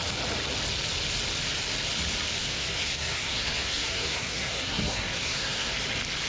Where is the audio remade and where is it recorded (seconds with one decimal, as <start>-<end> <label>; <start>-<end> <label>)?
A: 0.0-2.4 recorded; 2.4-5.7 remade; 5.7-6.3 recorded